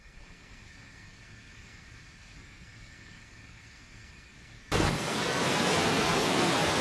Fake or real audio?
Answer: fake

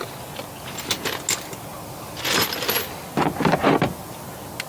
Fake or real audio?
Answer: real